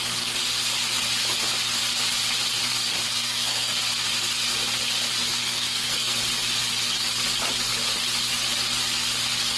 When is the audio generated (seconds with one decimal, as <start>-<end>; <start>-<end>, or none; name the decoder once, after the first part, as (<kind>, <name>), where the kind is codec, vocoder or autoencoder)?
3.0-3.7 (codec, SNAC); 5.4-6.2